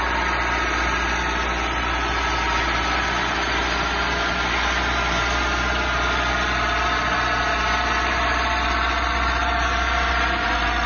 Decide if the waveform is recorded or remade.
recorded